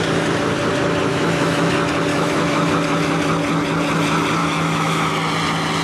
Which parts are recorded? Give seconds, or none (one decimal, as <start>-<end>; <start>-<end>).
0.0-1.1; 1.7-2.1; 2.7-4.4; 5.1-5.8